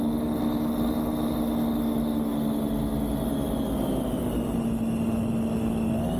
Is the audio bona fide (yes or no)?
yes